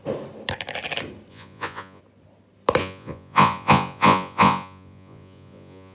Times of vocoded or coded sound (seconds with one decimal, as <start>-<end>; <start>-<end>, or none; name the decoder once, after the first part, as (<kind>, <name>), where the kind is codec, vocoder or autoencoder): 1.3-2.0 (vocoder, Vocos); 2.8-5.9